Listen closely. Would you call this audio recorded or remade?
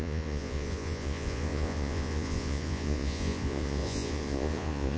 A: remade